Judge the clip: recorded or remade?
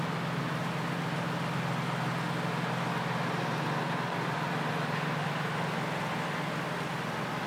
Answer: recorded